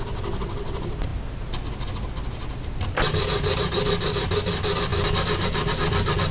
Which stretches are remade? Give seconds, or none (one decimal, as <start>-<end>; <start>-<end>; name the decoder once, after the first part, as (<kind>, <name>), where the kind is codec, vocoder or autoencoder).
none